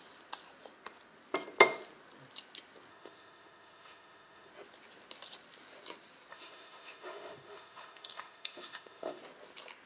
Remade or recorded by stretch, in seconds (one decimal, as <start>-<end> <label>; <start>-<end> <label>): 0.0-2.9 recorded; 2.9-4.5 remade; 4.5-6.3 recorded; 6.3-9.2 remade; 9.2-9.9 recorded

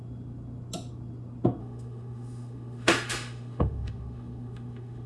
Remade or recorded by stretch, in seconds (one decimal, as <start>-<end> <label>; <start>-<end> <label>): 0.0-1.6 recorded; 1.6-5.1 remade

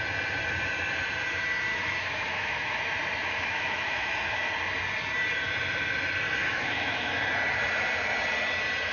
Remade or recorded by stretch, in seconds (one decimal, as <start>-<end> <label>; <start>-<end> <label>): 0.0-1.7 recorded; 1.7-2.8 remade; 2.8-3.2 recorded; 3.2-4.4 remade; 4.4-6.4 recorded; 6.4-7.1 remade; 7.1-8.9 recorded

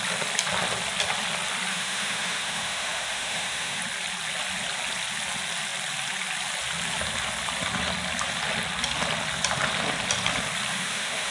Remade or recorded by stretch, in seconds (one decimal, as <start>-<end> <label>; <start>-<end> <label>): 0.0-1.7 recorded; 1.7-3.8 remade; 3.8-10.7 recorded; 10.7-11.3 remade

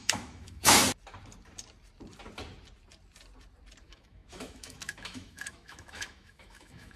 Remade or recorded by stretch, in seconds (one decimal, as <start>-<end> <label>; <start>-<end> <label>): 0.0-0.8 remade; 0.8-3.8 recorded; 3.8-7.0 remade

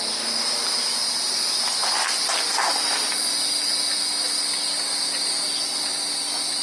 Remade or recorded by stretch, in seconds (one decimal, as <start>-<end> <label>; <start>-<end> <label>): 0.0-6.6 recorded

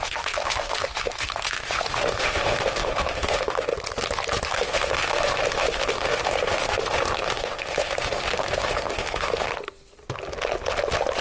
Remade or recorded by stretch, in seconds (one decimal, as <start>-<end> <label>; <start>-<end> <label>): 0.0-3.7 remade; 3.7-4.5 recorded; 4.5-9.5 remade; 9.5-11.2 recorded